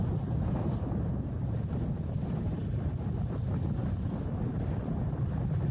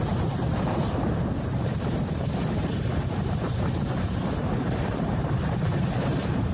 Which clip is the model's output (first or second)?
second